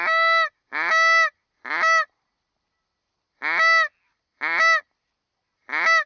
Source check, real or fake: real